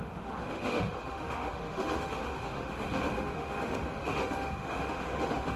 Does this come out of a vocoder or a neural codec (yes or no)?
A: yes